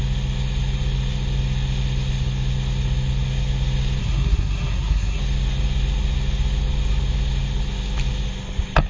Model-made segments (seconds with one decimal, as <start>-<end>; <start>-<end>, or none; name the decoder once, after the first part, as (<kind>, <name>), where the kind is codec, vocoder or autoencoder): 4.0-5.2 (codec, SNAC)

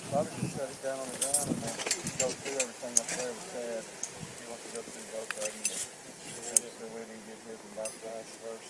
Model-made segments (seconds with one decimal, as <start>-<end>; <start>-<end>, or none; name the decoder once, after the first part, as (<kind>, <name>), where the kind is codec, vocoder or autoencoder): 4.9-6.2 (vocoder, BigVGAN v2)

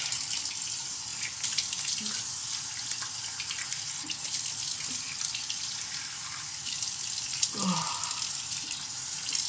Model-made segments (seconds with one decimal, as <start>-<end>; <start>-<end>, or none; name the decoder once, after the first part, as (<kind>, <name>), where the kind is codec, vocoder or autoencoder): none

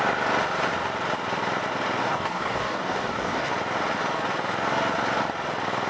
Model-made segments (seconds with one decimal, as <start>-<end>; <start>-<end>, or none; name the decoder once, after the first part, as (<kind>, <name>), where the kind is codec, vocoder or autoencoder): 2.0-3.5 (codec, DAC)

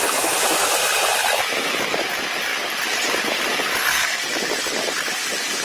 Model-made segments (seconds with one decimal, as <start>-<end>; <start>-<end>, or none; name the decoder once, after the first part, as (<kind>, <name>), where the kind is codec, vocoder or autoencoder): none

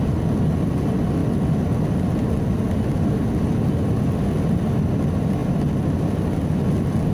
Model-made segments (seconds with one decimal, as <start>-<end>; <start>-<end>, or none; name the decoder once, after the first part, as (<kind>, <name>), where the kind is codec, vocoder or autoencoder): none

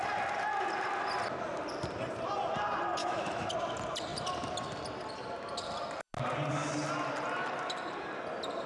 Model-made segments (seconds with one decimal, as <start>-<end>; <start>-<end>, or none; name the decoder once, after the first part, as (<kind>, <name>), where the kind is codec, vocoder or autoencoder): 3.0-3.5 (autoencoder, DAC-VAE)